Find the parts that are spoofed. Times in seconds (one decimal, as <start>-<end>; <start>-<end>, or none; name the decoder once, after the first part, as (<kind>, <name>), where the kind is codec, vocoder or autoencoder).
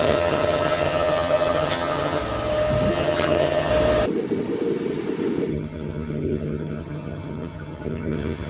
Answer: 0.0-2.2 (vocoder, HiFi-GAN); 2.9-3.7; 5.5-8.5